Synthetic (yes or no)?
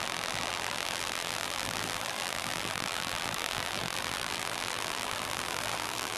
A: yes